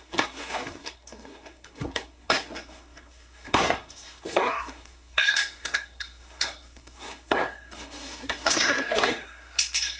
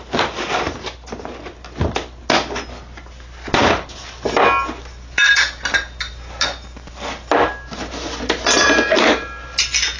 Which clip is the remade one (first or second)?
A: first